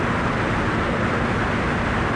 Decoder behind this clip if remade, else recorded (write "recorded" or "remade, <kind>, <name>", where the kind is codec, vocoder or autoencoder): recorded